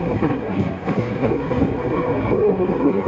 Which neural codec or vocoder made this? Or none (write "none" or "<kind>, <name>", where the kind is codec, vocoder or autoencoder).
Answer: codec, SNAC